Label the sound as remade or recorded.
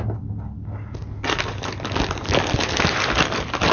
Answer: recorded